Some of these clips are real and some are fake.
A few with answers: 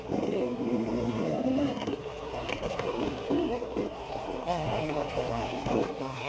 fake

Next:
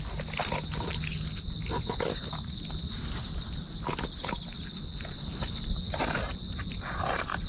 real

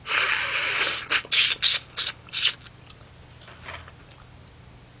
real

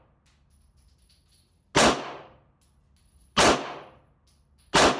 real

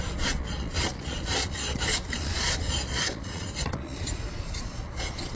fake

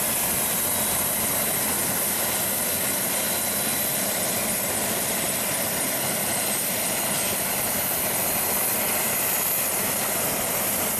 real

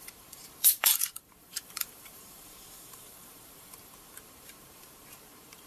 fake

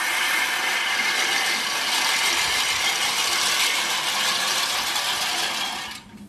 real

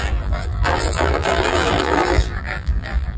fake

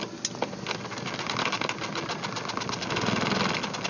real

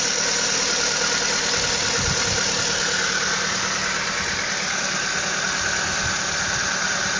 real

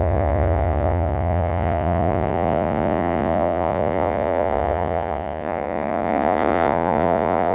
fake